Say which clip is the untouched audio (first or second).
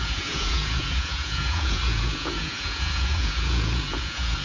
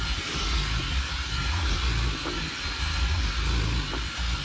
second